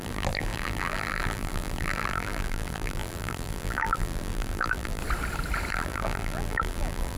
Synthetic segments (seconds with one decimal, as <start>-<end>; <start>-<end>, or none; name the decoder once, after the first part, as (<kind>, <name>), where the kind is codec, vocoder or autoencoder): 0.0-5.0 (vocoder, BigVGAN v2); 5.7-7.2